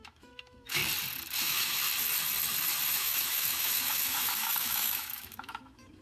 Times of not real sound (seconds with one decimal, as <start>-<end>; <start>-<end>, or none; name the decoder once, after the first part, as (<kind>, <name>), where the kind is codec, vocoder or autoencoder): 0.0-0.8 (autoencoder, DAC-VAE); 1.4-1.8; 2.9-6.0